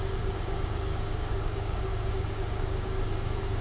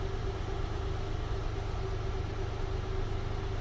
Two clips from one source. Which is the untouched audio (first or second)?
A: second